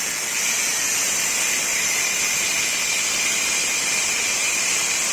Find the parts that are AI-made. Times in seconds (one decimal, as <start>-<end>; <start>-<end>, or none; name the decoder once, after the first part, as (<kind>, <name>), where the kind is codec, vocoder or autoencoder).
none